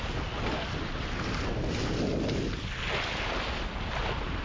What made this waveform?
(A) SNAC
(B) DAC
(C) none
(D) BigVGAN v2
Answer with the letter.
C